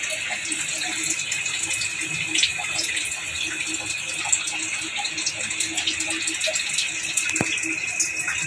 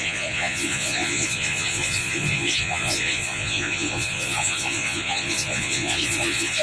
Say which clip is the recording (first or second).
first